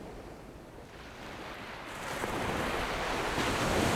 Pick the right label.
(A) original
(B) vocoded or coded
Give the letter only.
A